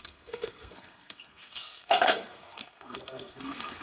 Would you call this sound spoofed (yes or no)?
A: yes